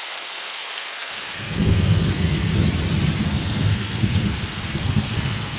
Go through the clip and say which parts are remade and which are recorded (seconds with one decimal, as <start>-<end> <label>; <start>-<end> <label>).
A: 0.0-2.5 remade; 2.5-3.2 recorded; 3.2-5.6 remade